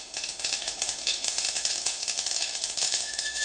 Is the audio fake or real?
fake